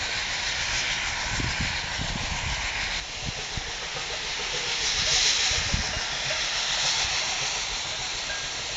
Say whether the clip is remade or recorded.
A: recorded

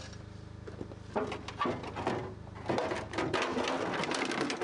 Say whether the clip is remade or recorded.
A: recorded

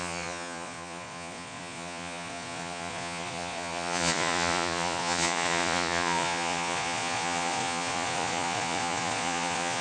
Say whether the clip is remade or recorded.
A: remade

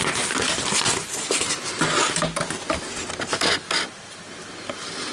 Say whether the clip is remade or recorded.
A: recorded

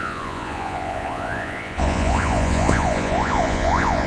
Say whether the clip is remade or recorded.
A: remade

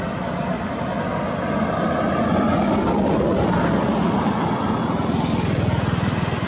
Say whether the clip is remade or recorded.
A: recorded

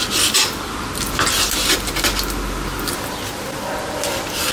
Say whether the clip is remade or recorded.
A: recorded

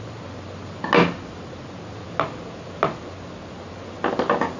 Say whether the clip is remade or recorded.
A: recorded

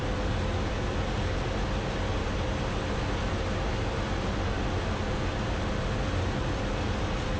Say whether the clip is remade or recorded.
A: recorded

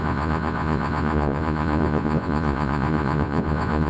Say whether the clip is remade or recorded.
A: remade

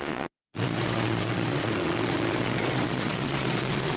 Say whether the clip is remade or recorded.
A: remade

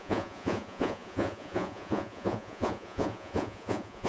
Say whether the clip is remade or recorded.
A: remade